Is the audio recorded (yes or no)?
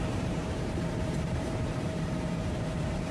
no